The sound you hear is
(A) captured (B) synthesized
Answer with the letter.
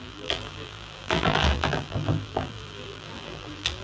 B